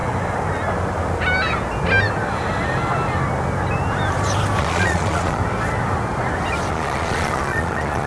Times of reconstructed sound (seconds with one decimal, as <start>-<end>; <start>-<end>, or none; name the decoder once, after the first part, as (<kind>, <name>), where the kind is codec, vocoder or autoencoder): 4.6-5.4 (vocoder, Vocos); 6.7-8.1